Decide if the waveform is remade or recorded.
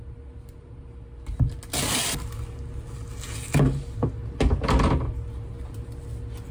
recorded